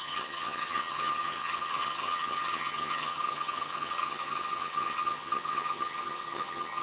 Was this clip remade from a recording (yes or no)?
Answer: yes